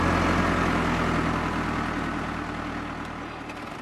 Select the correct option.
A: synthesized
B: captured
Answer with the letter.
B